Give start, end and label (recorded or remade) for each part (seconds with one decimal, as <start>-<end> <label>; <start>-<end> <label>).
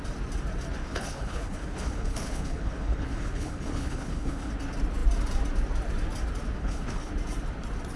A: 0.0-0.8 recorded; 0.8-4.5 remade; 4.5-6.6 recorded; 6.6-7.1 remade; 7.1-8.0 recorded